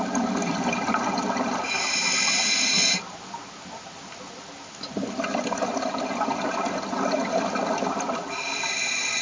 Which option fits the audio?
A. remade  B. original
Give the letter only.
B